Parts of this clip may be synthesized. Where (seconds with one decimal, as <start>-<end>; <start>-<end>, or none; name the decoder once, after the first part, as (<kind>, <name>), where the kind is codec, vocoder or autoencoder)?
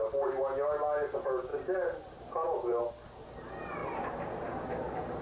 1.5-2.9 (vocoder, BigVGAN v2); 3.8-5.2